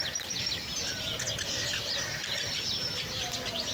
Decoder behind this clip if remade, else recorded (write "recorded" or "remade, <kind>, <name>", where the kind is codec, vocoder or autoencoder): recorded